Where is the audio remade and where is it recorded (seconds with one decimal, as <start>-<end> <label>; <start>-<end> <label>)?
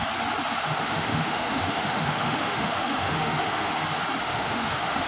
0.0-0.6 recorded; 0.6-3.7 remade; 3.7-4.2 recorded; 4.2-5.1 remade